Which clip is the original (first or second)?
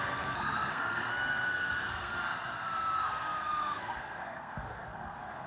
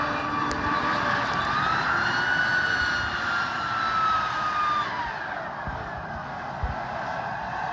second